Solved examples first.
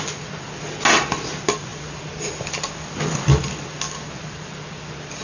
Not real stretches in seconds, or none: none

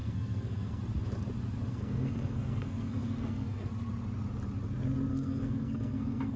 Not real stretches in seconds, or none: 0.0-0.8 (codec, SNAC); 1.7-3.7; 5.1-6.4

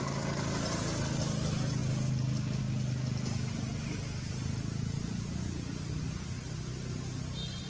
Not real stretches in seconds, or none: none